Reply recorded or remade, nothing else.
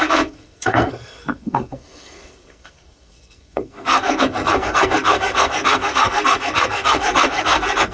remade